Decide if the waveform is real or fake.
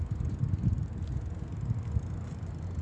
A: real